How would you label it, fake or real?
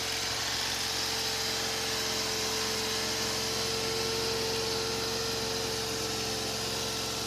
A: real